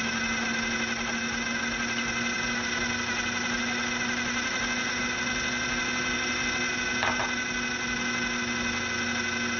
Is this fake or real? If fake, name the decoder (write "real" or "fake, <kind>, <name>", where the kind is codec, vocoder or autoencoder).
real